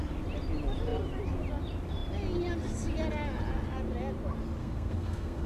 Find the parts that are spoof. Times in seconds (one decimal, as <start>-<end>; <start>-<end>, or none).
4.6-5.5

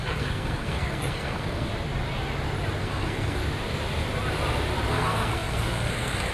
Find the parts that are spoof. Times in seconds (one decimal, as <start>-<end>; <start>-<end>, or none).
0.0-1.7; 2.8-3.4; 4.9-6.3

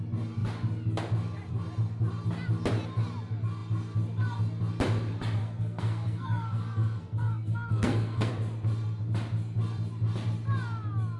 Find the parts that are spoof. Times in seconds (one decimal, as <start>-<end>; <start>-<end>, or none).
5.4-8.3

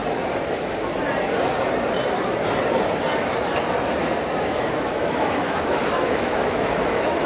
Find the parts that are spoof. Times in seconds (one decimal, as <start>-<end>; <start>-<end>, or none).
4.4-7.3

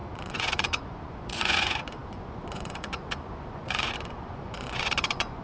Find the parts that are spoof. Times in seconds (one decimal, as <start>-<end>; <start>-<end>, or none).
0.0-5.4

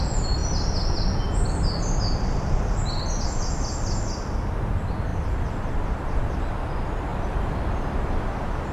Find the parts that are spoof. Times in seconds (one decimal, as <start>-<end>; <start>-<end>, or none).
5.1-5.7; 7.1-8.7

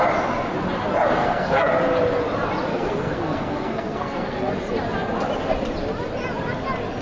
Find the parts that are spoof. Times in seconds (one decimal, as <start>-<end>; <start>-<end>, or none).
1.2-1.7; 2.7-4.5